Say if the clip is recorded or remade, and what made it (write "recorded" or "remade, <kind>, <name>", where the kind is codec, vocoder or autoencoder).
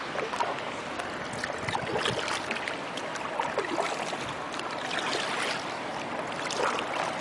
recorded